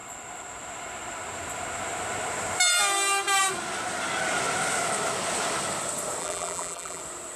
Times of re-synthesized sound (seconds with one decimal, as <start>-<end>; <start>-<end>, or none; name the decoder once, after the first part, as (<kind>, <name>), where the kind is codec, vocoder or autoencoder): 6.2-7.0 (vocoder, BigVGAN v2)